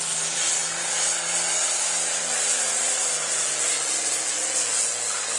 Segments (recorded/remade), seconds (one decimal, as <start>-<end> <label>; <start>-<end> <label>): 0.0-5.4 recorded